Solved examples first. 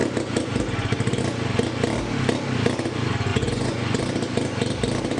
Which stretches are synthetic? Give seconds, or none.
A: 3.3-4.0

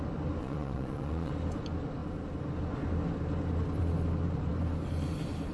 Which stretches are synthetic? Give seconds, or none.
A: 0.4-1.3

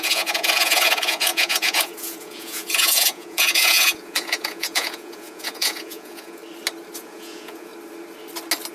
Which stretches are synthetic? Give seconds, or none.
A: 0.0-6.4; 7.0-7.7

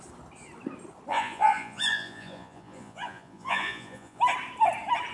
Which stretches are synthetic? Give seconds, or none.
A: 1.1-4.2

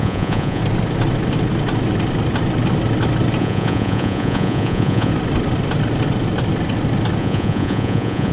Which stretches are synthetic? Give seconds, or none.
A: 0.0-0.6; 3.4-5.1; 7.2-8.3

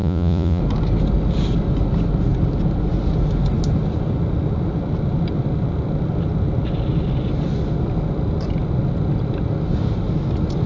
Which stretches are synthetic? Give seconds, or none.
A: 0.0-0.6

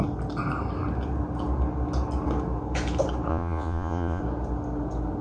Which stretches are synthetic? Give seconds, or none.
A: 3.3-4.2

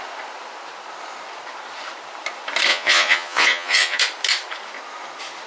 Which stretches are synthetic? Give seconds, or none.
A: 2.7-4.0